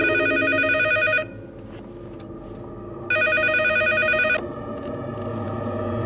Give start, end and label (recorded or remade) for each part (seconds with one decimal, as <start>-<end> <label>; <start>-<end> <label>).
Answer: 0.0-4.5 recorded; 4.5-6.1 remade